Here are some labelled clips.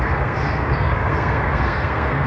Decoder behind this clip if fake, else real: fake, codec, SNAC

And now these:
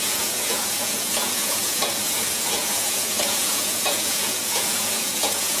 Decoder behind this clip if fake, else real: fake, vocoder, Vocos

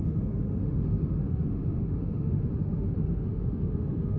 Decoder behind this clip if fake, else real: fake, autoencoder, DAC-VAE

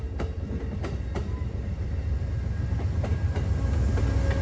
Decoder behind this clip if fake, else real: real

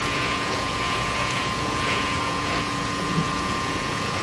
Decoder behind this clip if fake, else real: fake, vocoder, Vocos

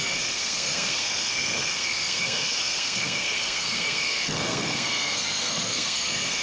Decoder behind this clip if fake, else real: fake, codec, SNAC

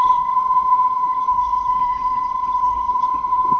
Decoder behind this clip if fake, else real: fake, codec, HILCodec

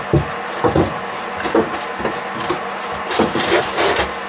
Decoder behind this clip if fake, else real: real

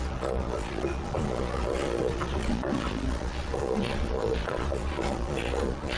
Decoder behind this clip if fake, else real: fake, vocoder, Vocos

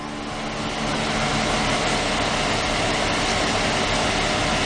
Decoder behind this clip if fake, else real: real